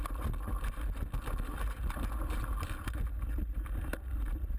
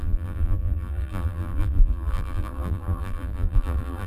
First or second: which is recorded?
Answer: first